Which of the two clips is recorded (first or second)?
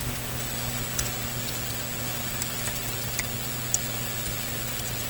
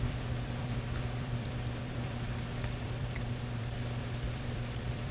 first